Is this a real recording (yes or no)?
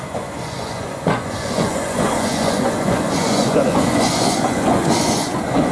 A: no